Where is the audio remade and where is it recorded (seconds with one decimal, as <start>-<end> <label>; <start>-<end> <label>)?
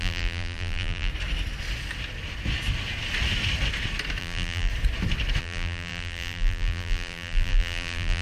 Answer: 0.0-1.1 remade; 1.1-4.2 recorded; 4.2-4.7 remade; 4.7-5.4 recorded; 5.4-8.2 remade